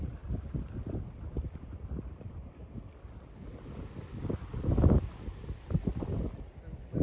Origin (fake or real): real